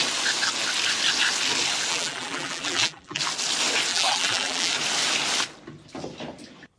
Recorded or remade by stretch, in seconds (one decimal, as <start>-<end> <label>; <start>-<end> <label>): 0.0-1.9 recorded; 1.9-3.2 remade; 3.2-3.9 recorded; 3.9-4.7 remade; 4.7-6.8 recorded